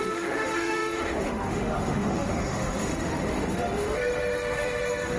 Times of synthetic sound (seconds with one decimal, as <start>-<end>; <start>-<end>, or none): 0.0-5.2